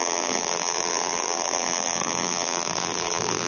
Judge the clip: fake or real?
fake